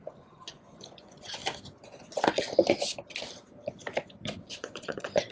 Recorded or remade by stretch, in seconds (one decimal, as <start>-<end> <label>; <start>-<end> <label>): 0.0-1.4 remade; 1.4-4.2 recorded; 4.2-5.3 remade

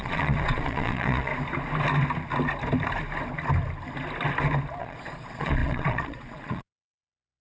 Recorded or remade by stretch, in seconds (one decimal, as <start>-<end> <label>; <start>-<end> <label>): 0.0-1.3 remade; 1.3-4.8 recorded; 4.8-7.4 remade